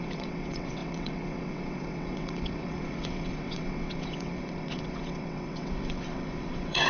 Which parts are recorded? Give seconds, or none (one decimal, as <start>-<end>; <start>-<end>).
none